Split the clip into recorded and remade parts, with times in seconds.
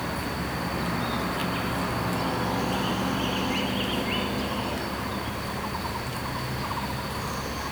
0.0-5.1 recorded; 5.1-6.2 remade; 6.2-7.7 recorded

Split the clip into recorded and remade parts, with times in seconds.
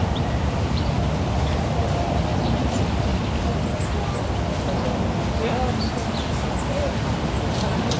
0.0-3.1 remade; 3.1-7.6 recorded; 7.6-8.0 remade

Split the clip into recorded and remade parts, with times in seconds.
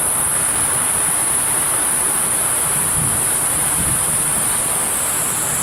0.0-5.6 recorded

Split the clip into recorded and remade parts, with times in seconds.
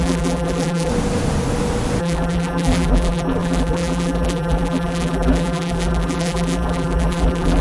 0.0-0.9 remade; 0.9-2.0 recorded; 2.0-7.6 remade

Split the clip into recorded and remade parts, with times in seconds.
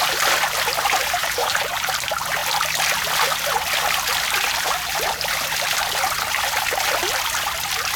0.0-1.2 recorded; 1.2-1.9 remade; 1.9-4.5 recorded; 4.5-5.3 remade; 5.3-8.0 recorded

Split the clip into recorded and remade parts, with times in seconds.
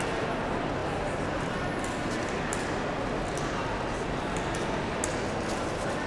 0.0-6.1 recorded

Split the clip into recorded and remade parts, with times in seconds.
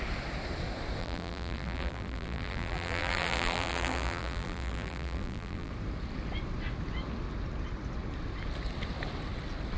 0.0-1.0 recorded; 1.0-5.7 remade; 5.7-9.8 recorded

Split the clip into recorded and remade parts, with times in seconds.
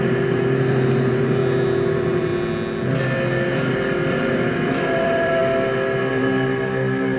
0.0-1.4 remade; 1.4-1.9 recorded; 1.9-2.3 remade; 2.3-4.1 recorded; 4.1-5.4 remade; 5.4-6.1 recorded; 6.1-7.2 remade